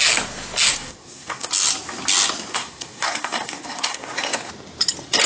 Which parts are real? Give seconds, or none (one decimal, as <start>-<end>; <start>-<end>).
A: 0.0-0.7; 1.5-2.5; 4.5-5.3